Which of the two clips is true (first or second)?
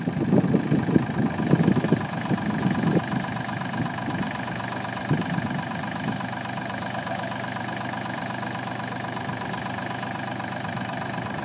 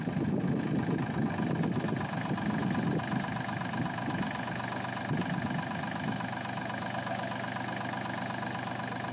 second